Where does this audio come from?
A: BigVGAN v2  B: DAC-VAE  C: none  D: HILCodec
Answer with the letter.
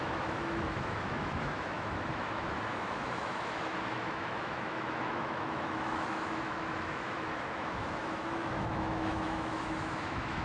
B